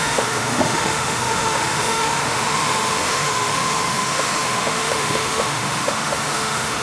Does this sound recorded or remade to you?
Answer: remade